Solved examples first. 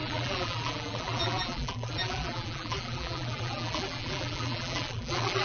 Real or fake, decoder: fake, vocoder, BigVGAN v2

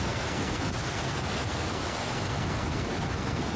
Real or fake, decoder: fake, codec, SNAC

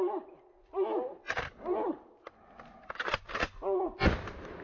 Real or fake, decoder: real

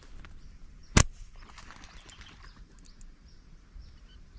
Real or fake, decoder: real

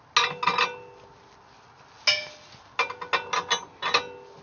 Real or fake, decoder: real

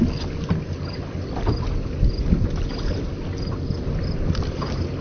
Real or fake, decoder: real